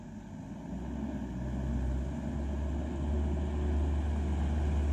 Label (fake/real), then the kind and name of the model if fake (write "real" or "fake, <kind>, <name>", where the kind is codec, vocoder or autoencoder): real